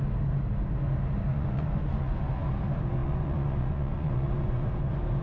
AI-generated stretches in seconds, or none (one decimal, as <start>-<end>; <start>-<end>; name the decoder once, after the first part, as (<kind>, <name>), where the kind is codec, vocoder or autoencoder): 1.3-2.3 (vocoder, Vocos); 3.0-4.7

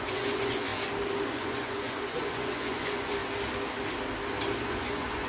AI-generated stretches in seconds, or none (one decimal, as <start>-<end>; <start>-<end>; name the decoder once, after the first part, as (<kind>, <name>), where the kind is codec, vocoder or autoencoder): 0.0-0.7 (vocoder, Vocos); 1.3-3.2; 4.7-5.3

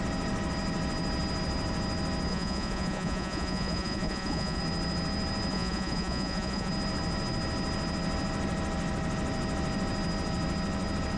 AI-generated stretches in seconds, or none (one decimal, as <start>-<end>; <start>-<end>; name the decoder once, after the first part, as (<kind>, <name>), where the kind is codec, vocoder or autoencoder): 2.3-4.6 (vocoder, Vocos); 5.5-6.7

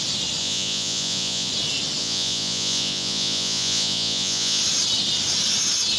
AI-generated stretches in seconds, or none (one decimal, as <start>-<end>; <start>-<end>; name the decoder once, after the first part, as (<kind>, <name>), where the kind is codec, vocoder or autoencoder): 0.4-1.5 (vocoder, Vocos); 2.0-4.6

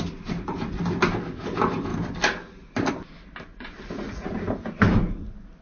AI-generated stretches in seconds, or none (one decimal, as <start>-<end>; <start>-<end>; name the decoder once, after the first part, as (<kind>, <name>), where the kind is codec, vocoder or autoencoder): 3.5-4.3 (vocoder, Vocos)

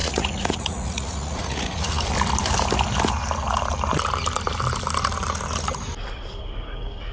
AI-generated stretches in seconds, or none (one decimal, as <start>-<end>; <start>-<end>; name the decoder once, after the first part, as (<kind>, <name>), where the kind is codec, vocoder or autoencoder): 0.0-2.0 (vocoder, Vocos)

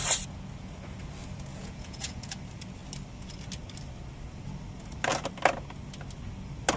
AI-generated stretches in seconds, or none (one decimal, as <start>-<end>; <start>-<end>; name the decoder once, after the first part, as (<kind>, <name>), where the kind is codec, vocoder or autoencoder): 1.5-2.3 (vocoder, Vocos)

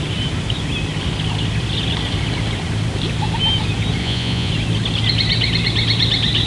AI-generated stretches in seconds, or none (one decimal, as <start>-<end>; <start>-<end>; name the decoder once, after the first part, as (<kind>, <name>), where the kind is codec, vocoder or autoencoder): 4.0-4.5 (vocoder, Vocos)